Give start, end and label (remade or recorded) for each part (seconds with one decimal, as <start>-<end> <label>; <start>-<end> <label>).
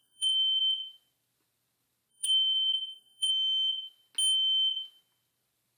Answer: 0.0-0.6 remade; 0.6-2.1 recorded; 2.1-3.3 remade; 3.3-5.8 recorded